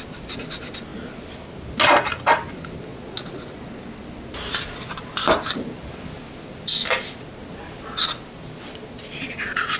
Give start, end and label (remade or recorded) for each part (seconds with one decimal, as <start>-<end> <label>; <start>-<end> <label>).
0.0-2.9 recorded; 2.9-3.6 remade; 3.6-9.8 recorded